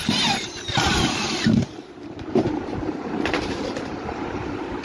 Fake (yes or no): yes